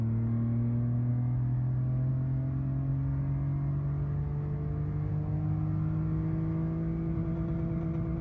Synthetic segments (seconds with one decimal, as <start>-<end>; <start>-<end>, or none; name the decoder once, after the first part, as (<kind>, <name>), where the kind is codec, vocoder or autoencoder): none